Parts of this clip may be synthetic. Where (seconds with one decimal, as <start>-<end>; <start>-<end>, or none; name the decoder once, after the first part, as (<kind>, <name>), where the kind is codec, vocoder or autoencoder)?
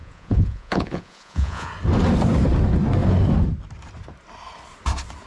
0.0-1.7 (vocoder, Vocos)